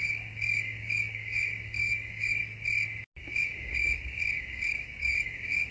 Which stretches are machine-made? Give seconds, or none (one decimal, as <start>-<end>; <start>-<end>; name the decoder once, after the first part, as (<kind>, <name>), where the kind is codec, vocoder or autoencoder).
0.0-2.4 (codec, DAC); 3.2-5.7